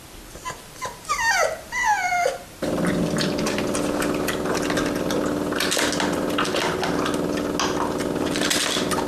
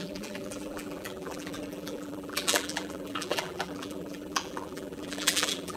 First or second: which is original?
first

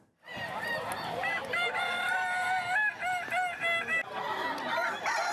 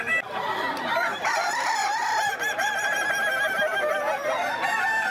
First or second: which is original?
first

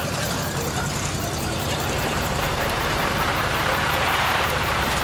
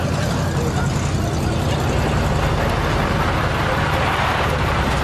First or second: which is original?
second